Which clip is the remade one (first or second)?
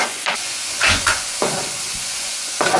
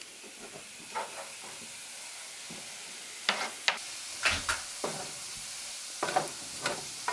first